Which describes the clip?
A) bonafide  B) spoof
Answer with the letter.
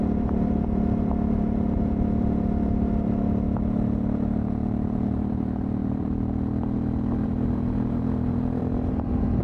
B